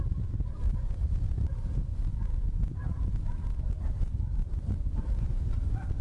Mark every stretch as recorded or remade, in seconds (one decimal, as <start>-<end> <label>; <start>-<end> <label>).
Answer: 0.0-2.1 remade; 2.1-4.2 recorded; 4.2-6.0 remade